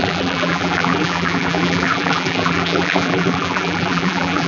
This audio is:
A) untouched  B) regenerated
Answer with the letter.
B